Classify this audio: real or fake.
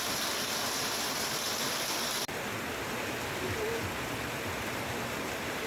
real